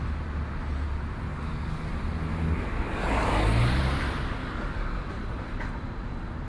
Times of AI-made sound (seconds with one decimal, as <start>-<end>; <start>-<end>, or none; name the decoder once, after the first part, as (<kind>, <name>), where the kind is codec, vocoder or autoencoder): 1.3-1.9 (codec, DAC); 2.3-3.8; 4.4-5.1